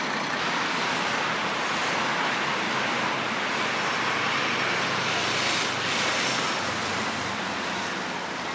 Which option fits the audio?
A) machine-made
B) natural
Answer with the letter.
B